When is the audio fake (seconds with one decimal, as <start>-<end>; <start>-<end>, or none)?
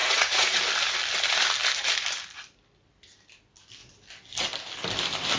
0.0-0.6